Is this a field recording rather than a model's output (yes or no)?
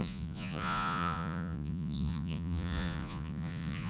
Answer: no